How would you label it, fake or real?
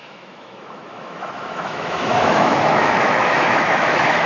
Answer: fake